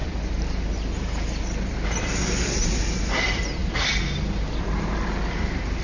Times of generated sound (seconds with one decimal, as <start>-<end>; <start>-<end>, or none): none